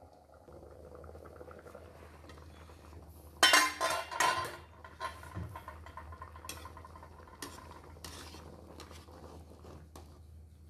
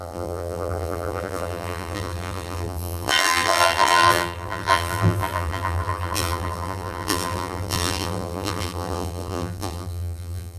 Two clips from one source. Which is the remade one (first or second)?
second